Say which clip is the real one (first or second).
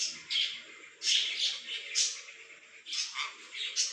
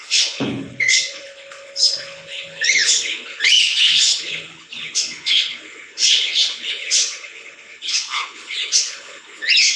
first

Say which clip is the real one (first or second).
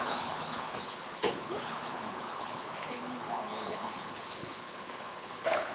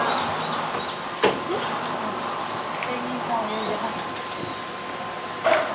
second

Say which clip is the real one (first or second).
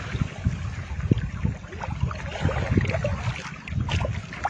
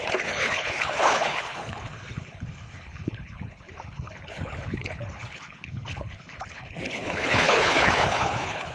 first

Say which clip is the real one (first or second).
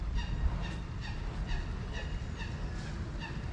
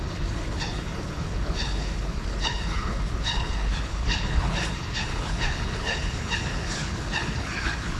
first